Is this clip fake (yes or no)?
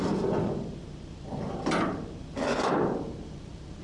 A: yes